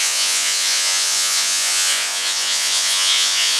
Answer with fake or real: fake